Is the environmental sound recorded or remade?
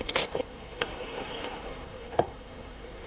remade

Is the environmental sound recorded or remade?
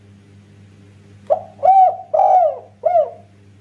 recorded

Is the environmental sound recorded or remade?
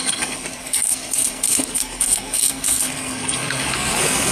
remade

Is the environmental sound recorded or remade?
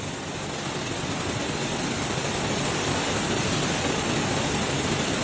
recorded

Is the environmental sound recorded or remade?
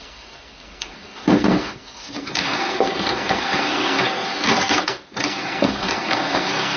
remade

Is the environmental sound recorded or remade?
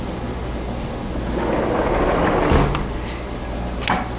recorded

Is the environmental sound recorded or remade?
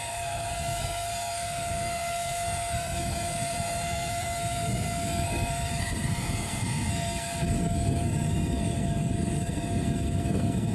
remade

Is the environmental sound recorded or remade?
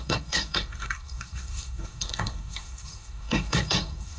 remade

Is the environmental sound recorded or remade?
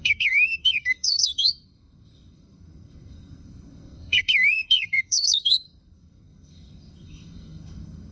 remade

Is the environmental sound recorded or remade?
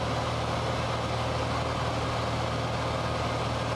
recorded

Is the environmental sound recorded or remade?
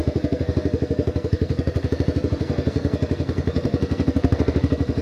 remade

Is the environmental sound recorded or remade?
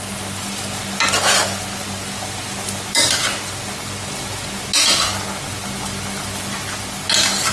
recorded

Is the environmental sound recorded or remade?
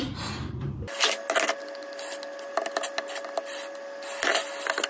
recorded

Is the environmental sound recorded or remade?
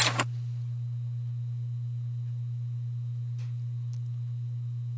recorded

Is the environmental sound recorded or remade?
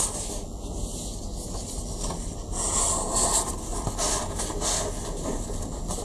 recorded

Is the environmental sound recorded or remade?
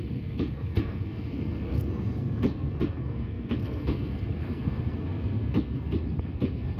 remade